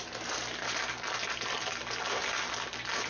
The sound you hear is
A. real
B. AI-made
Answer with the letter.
A